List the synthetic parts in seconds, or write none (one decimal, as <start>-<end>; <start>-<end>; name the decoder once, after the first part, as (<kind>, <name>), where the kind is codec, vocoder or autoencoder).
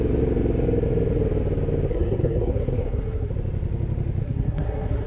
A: 1.9-3.3 (codec, SNAC); 4.2-5.1